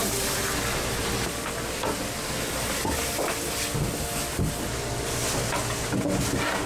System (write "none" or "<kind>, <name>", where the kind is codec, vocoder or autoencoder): none